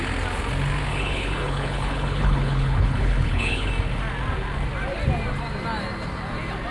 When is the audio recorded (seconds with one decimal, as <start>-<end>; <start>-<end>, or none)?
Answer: 0.0-0.9; 3.7-6.7